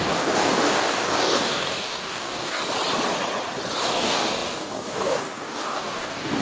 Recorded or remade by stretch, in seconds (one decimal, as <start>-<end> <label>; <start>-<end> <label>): 0.0-2.6 remade; 2.6-3.8 recorded; 3.8-6.4 remade